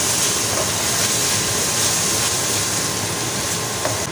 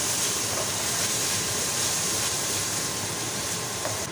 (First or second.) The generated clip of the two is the second